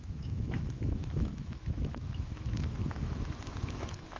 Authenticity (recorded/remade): remade